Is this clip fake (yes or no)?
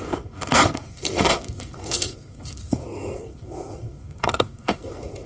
yes